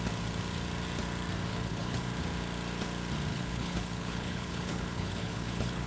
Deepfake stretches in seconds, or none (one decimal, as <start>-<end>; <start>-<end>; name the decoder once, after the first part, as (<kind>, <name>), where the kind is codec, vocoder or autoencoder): 1.5-2.0 (codec, HILCodec); 3.3-5.9